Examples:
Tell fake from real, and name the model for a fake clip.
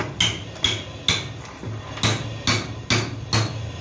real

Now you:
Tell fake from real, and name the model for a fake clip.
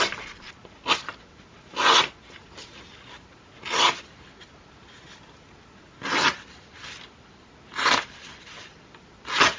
real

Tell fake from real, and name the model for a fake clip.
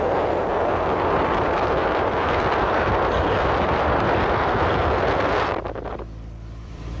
fake, vocoder, BigVGAN v2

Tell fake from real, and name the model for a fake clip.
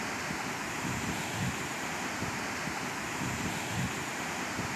real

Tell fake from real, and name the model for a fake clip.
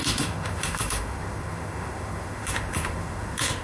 fake, autoencoder, DAC-VAE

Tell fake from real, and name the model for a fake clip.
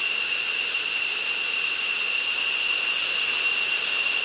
real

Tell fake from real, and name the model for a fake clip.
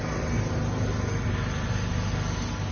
real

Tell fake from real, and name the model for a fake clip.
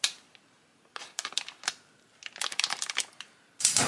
real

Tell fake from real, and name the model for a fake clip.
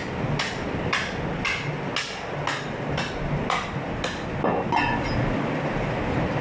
real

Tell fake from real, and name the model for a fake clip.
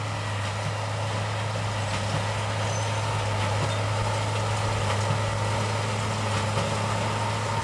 real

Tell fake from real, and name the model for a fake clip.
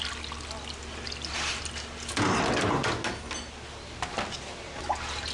real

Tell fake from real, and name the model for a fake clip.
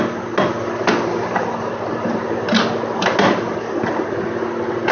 real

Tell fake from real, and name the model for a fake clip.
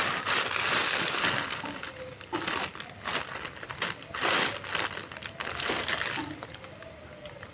real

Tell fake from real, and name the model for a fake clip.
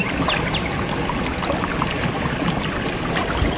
real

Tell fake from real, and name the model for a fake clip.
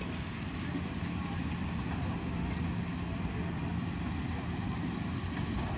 real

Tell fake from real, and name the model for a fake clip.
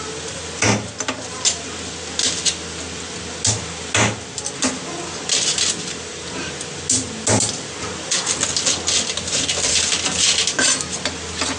real